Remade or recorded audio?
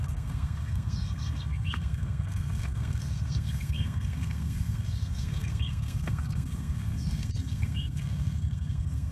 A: remade